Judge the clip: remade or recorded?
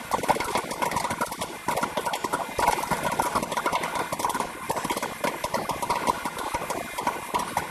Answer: recorded